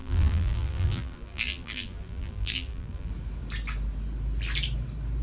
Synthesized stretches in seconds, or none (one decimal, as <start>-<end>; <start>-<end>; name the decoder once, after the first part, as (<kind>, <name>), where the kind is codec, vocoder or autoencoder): 0.0-3.1 (vocoder, BigVGAN v2)